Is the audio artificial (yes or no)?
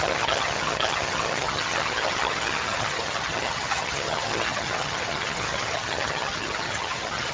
yes